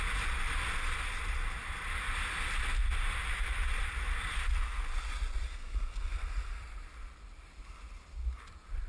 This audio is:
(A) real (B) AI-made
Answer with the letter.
A